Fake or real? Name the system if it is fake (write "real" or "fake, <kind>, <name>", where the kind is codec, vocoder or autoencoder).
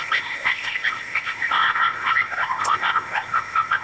fake, codec, ZipCodec